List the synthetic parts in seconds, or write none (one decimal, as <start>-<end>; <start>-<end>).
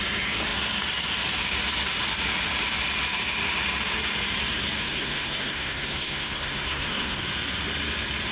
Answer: 4.8-7.2